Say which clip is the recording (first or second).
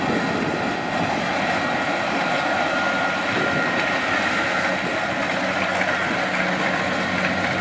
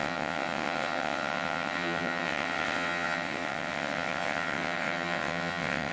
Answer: first